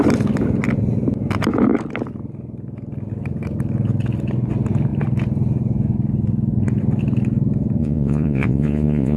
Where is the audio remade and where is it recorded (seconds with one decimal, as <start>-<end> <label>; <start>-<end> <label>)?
0.0-7.8 recorded; 7.8-9.2 remade